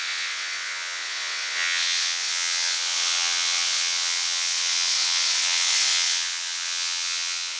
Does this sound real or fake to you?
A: fake